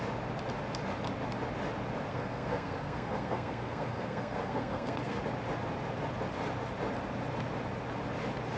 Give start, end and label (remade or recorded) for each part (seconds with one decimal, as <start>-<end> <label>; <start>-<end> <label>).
0.0-2.1 recorded; 2.1-5.2 remade; 5.2-8.6 recorded

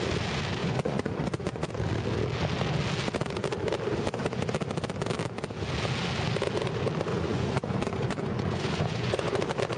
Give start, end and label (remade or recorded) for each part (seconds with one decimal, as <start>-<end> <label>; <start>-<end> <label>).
0.0-0.6 recorded; 0.6-1.7 remade; 1.7-7.1 recorded; 7.1-9.4 remade; 9.4-9.8 recorded

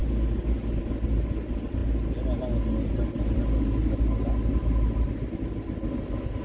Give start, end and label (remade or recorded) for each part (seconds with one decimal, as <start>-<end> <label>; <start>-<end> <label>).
0.0-6.4 recorded

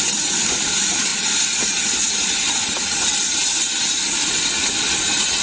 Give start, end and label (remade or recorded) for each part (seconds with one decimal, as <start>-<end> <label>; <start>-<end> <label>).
0.0-5.4 recorded

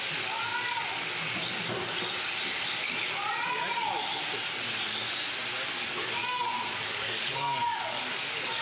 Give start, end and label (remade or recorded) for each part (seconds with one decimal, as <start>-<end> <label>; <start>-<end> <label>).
0.0-6.2 recorded; 6.2-8.6 remade